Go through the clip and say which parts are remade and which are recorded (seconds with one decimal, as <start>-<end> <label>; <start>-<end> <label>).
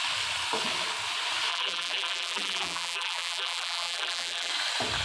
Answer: 0.0-1.5 recorded; 1.5-4.5 remade; 4.5-5.0 recorded